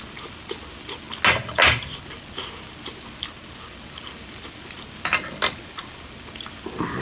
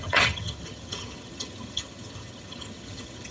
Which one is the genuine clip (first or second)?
first